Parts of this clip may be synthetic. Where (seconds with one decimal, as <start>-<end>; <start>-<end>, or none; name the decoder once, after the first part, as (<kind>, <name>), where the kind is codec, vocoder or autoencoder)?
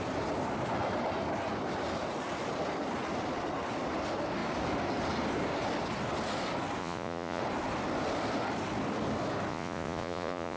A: 6.8-7.4 (vocoder, Vocos); 9.5-10.6